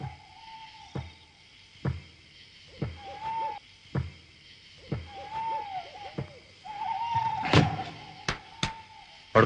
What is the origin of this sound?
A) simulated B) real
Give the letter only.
B